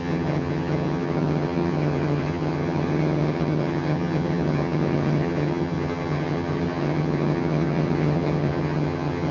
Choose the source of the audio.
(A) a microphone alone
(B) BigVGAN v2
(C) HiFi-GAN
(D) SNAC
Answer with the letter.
C